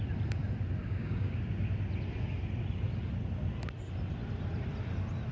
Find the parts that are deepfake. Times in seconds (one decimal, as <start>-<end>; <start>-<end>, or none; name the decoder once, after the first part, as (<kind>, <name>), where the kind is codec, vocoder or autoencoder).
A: 0.8-1.3 (codec, DAC)